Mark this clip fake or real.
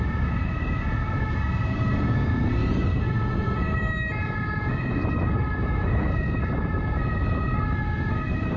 real